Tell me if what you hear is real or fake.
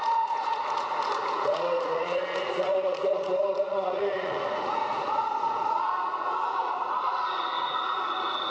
fake